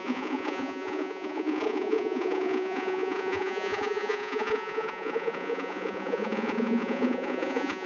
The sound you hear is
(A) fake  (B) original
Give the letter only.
A